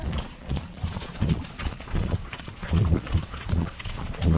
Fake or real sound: fake